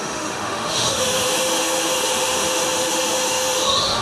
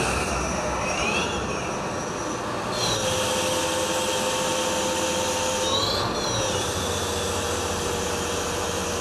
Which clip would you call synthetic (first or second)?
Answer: first